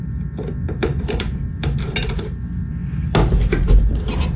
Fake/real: real